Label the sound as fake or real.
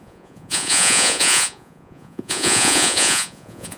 fake